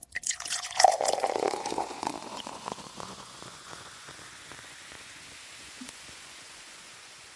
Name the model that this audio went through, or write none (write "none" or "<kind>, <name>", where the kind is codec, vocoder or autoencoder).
vocoder, Vocos